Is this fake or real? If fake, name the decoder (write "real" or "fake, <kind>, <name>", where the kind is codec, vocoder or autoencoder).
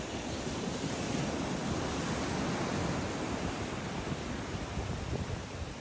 real